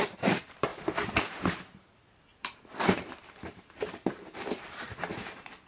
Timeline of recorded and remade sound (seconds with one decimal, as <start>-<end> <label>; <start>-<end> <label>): 0.0-5.7 remade